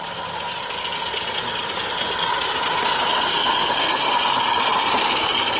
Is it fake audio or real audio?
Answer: real